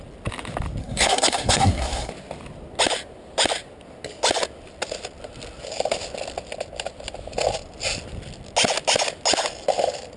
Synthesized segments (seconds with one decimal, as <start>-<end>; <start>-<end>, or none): 0.8-2.1